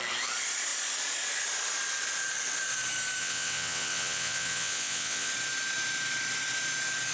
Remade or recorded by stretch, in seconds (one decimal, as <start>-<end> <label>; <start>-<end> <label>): 0.0-3.2 recorded; 3.2-5.3 remade; 5.3-7.1 recorded